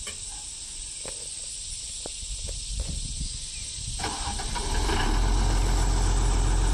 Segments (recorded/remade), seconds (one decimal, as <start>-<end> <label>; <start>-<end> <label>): 0.0-2.7 recorded; 2.7-3.6 remade; 3.6-6.7 recorded